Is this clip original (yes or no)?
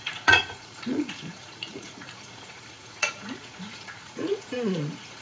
no